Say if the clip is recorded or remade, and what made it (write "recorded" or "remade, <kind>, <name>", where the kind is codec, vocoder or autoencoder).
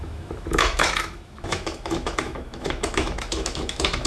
remade, autoencoder, DAC-VAE